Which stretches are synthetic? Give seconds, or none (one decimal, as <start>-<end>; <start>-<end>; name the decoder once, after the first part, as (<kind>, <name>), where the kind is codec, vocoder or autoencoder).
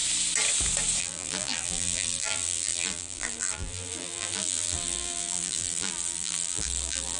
1.0-7.2 (vocoder, BigVGAN v2)